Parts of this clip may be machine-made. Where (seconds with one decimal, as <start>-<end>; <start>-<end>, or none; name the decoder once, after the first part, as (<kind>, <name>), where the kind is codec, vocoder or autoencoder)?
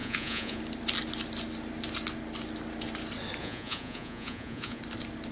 0.0-0.6 (vocoder, Vocos); 3.4-4.8